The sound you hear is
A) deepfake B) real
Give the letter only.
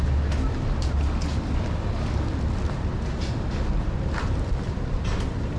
B